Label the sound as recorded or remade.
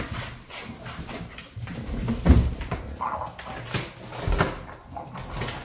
recorded